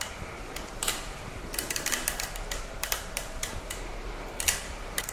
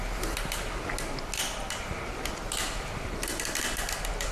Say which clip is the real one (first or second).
second